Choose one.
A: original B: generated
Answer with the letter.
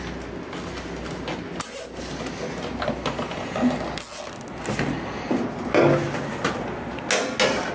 A